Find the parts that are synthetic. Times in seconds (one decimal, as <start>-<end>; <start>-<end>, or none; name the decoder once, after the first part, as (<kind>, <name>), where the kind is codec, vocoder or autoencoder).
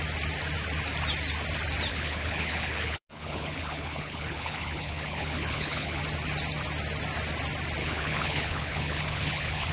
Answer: 1.9-6.0 (codec, HILCodec); 7.8-9.7